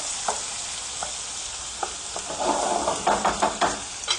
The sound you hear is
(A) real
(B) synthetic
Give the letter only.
A